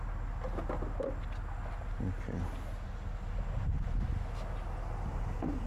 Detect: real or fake real